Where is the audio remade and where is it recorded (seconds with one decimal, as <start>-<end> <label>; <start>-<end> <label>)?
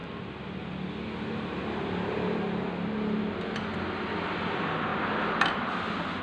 0.0-6.2 recorded